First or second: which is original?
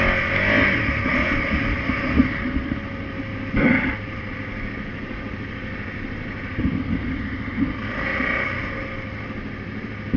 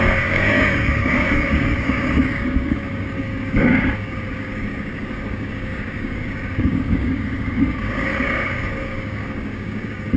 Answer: first